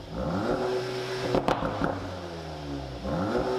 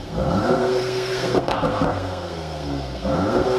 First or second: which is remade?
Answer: second